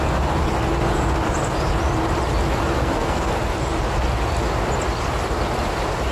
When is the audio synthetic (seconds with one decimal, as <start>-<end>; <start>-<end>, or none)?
2.8-3.3